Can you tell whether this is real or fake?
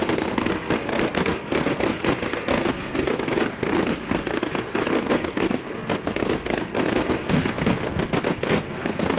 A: fake